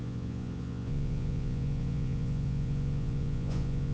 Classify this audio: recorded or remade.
remade